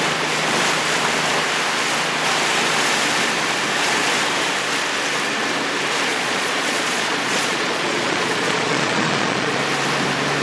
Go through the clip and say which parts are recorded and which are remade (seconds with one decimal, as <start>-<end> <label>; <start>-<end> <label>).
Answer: 0.0-6.1 recorded; 6.1-9.6 remade; 9.6-10.4 recorded